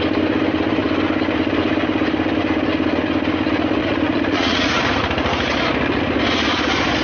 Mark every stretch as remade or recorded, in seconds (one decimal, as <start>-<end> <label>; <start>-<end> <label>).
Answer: 0.0-3.8 recorded; 3.8-4.8 remade; 4.8-7.0 recorded